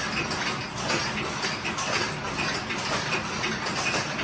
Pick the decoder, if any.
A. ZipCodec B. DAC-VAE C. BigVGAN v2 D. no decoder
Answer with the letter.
D